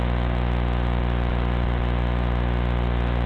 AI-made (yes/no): no